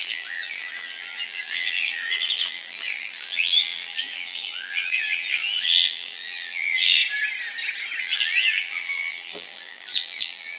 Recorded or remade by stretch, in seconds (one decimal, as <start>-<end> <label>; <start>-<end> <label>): 0.0-7.0 remade; 7.0-8.0 recorded; 8.0-10.6 remade